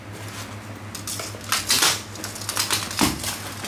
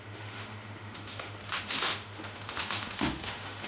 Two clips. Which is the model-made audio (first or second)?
second